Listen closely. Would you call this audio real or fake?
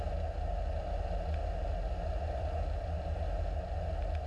real